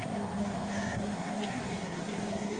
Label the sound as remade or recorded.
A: remade